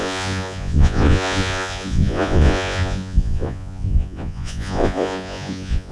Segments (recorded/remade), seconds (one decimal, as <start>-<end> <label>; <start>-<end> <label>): 0.0-5.9 remade